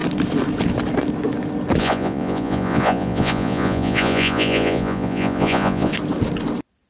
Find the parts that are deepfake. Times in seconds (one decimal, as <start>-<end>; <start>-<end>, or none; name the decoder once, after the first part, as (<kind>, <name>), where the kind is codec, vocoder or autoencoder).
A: 1.8-5.9 (vocoder, Vocos)

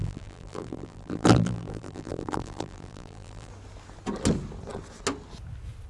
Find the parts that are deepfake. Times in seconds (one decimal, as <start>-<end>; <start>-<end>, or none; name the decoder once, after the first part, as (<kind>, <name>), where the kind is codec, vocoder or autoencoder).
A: 0.0-3.5 (vocoder, BigVGAN v2)

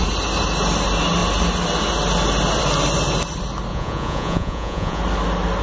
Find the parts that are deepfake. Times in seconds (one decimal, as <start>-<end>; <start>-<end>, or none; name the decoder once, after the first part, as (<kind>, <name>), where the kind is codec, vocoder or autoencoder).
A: 3.7-5.0 (vocoder, Vocos)

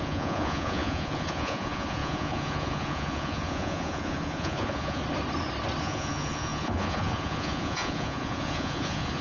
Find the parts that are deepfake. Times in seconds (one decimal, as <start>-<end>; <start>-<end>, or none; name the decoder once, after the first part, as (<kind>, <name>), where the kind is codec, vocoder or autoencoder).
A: 0.0-5.0 (vocoder, Vocos); 5.8-9.2

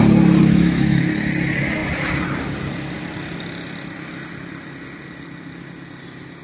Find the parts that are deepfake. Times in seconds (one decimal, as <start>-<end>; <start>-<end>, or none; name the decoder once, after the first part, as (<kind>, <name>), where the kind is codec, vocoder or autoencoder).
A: 0.4-1.0 (autoencoder, DAC-VAE)

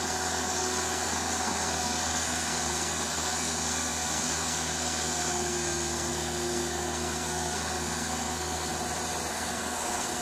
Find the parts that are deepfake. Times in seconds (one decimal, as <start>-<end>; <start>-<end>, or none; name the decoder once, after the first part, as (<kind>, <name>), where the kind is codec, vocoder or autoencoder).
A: 0.0-8.7 (codec, SNAC); 9.3-10.2

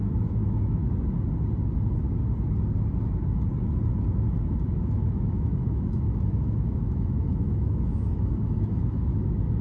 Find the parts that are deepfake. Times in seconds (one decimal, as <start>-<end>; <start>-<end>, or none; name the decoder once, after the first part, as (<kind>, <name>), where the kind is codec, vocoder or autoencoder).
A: 0.0-0.8 (autoencoder, DAC-VAE); 4.8-9.6

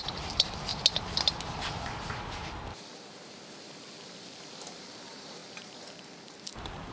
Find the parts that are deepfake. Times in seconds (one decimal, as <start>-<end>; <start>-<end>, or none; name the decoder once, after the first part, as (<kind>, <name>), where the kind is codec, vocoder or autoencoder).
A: 0.0-0.7 (vocoder, BigVGAN v2); 4.8-5.4; 6.0-6.9